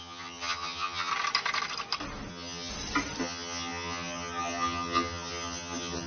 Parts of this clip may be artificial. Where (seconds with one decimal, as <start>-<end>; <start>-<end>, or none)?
0.0-1.1; 2.3-2.7; 3.2-6.1